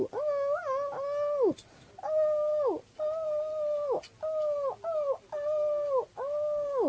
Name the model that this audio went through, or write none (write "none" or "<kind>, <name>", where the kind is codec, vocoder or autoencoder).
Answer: none